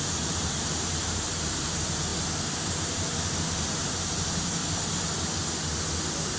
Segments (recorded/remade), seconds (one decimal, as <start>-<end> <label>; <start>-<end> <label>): 0.0-2.1 remade; 2.1-2.7 recorded; 2.7-4.6 remade; 4.6-6.4 recorded